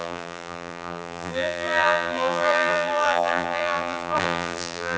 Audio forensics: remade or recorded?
remade